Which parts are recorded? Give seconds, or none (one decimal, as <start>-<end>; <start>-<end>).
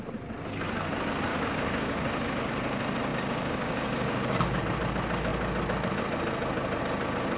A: 0.0-1.3; 2.5-3.1; 4.6-7.4